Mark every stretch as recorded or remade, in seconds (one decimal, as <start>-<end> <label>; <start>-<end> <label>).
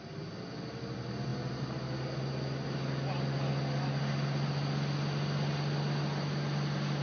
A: 0.0-7.0 recorded